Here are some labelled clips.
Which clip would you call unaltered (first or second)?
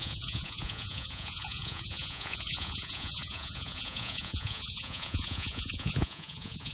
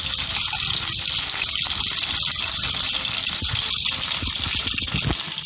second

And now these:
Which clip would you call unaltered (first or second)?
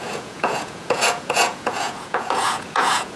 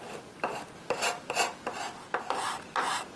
second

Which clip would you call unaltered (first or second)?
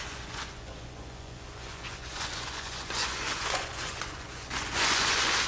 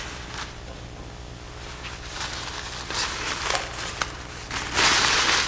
second